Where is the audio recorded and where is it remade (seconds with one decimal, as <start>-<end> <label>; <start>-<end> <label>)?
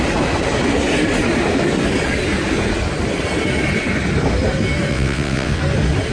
0.0-4.9 recorded; 4.9-5.6 remade; 5.6-6.1 recorded